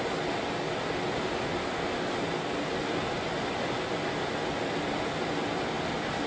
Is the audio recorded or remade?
recorded